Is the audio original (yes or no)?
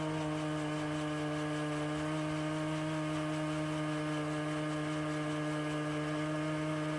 yes